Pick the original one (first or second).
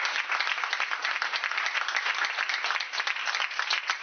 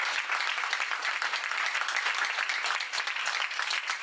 first